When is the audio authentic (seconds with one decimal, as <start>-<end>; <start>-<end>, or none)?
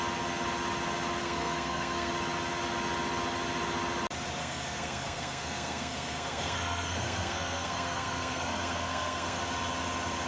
0.0-1.2; 2.1-4.4; 9.4-10.3